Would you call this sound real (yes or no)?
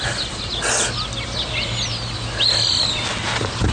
yes